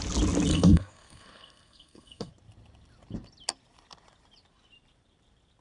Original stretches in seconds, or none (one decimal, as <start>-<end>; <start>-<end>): 0.0-0.5; 2.3-5.6